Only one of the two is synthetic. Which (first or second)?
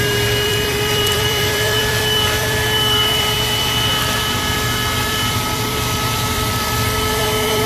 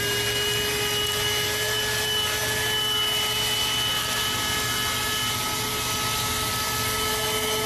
first